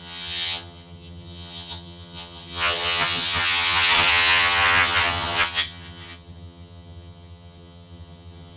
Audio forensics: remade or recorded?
remade